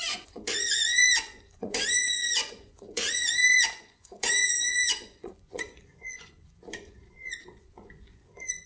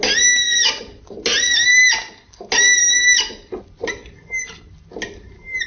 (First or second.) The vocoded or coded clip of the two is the first